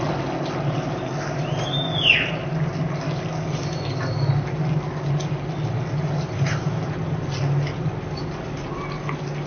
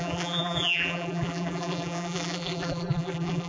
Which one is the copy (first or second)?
second